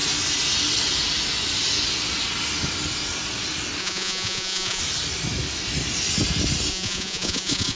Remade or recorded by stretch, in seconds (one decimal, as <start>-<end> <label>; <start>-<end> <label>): 0.0-3.8 recorded; 3.8-4.8 remade; 4.8-6.7 recorded; 6.7-7.8 remade